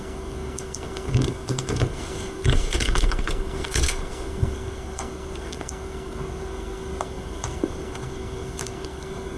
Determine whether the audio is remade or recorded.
remade